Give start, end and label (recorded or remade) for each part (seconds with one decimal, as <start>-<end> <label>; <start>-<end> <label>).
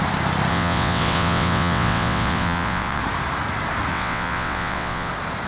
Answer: 0.0-0.5 recorded; 0.5-3.0 remade; 3.0-3.9 recorded; 3.9-5.1 remade; 5.1-5.5 recorded